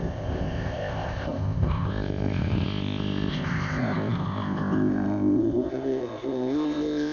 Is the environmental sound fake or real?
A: fake